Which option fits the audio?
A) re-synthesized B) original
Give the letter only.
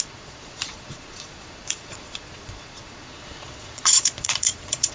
A